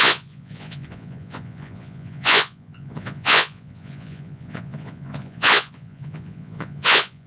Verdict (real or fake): fake